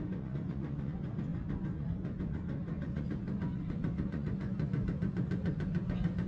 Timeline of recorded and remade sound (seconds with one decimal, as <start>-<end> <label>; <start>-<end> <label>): 0.0-6.3 remade